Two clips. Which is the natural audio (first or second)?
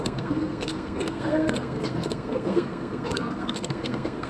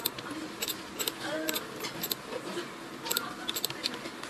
second